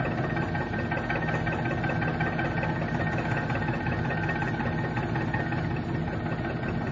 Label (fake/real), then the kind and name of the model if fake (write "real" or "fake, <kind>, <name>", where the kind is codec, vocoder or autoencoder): real